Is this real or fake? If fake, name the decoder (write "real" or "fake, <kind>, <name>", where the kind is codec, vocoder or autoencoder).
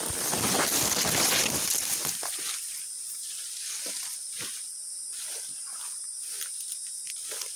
real